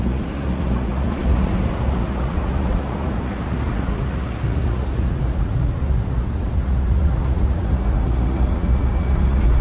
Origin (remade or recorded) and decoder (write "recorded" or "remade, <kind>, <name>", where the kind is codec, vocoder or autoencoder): remade, vocoder, Vocos